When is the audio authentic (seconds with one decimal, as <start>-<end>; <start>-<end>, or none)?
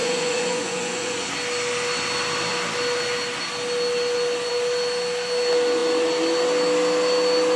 1.3-7.6